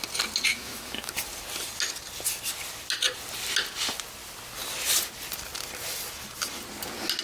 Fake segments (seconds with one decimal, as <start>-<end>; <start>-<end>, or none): 0.5-1.1